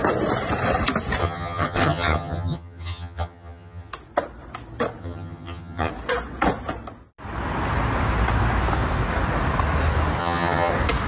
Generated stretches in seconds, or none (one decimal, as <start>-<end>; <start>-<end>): 1.2-3.9; 5.0-5.9; 10.2-10.7